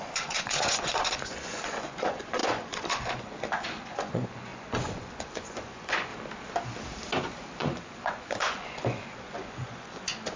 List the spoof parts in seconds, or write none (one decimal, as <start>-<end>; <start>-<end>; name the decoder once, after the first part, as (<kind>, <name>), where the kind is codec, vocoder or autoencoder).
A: 0.0-6.1 (vocoder, Vocos); 7.6-10.4